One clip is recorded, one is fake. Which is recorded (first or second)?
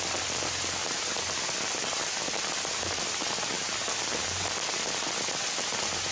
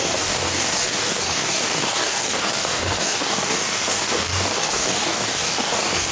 first